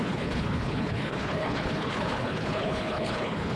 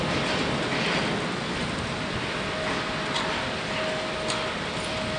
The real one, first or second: second